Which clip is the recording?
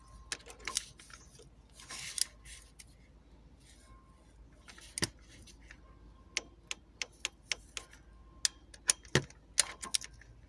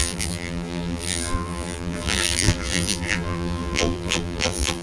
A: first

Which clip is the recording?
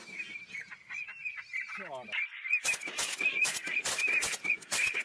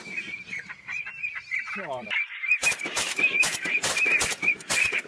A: first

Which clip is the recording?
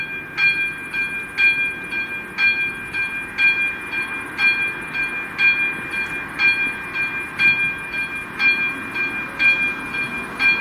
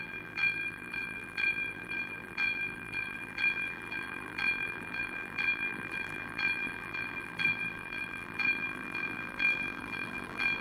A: first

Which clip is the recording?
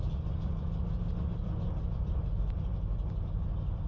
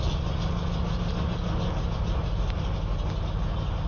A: second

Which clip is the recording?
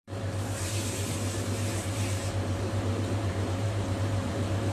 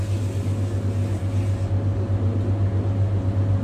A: second